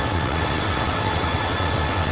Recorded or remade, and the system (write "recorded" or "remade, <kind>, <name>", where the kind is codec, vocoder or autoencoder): remade, vocoder, WaveNeXt